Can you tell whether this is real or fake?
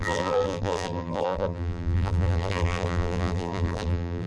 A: fake